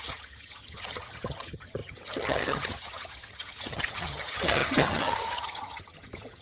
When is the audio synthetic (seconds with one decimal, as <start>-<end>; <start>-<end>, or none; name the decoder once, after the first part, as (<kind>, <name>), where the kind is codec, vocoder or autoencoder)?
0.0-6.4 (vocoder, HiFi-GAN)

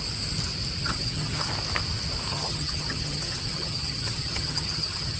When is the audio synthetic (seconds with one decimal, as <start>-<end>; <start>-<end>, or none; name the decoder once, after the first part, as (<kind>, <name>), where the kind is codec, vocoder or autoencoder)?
0.8-1.5 (vocoder, HiFi-GAN); 2.3-5.2

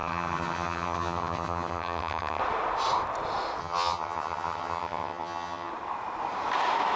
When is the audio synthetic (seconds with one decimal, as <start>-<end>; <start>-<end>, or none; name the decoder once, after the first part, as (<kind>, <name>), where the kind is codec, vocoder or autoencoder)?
0.0-2.4 (vocoder, HiFi-GAN); 3.6-5.7